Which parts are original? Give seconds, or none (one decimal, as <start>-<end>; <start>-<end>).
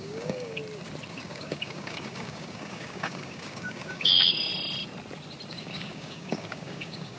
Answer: 0.6-1.1; 4.5-5.5